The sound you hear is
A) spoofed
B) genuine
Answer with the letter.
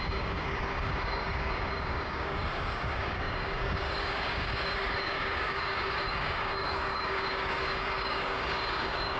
A